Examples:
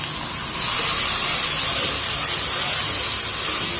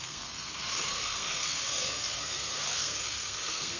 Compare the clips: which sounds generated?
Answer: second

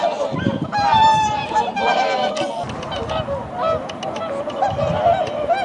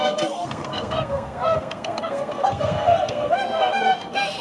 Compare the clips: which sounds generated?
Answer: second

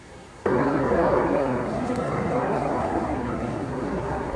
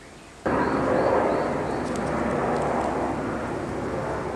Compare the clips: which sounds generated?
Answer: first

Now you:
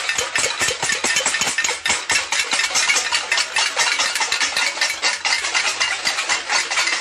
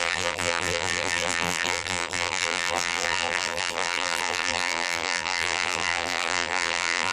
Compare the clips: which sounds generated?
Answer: second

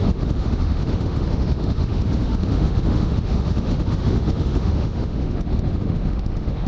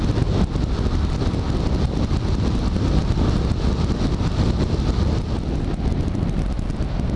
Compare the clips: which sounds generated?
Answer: first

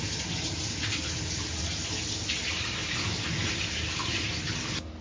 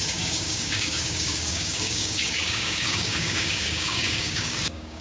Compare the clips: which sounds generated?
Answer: second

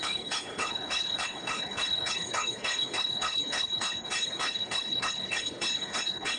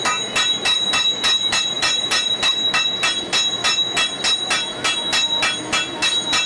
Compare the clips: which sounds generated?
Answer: first